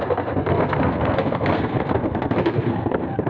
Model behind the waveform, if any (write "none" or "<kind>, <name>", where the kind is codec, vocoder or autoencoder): codec, SNAC